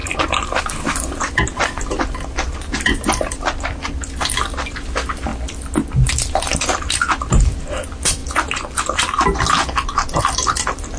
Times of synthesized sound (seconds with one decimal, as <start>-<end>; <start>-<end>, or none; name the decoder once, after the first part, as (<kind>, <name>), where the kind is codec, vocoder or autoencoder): 0.0-5.3 (vocoder, BigVGAN v2); 6.3-8.2; 10.2-11.0